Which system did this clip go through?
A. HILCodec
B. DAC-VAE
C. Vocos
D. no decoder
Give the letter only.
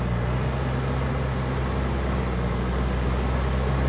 D